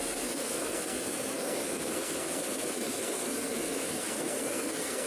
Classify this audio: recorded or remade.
remade